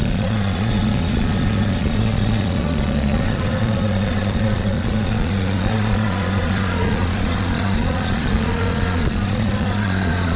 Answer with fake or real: fake